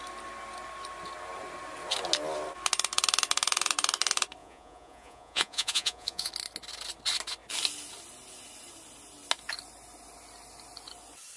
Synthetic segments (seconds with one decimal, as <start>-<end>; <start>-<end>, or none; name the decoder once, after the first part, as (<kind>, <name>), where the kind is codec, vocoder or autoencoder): 4.4-6.3 (vocoder, Vocos)